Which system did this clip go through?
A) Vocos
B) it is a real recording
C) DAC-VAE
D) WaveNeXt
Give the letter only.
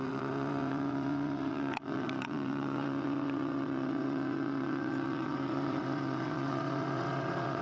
D